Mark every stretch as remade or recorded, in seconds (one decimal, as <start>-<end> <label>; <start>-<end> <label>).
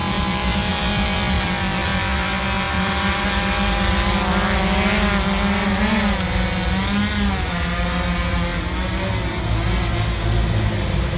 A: 0.0-11.2 recorded